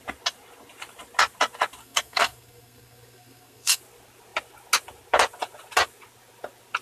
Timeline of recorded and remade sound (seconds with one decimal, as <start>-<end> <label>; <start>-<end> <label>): 0.0-1.8 recorded; 1.8-3.8 remade; 3.8-6.8 recorded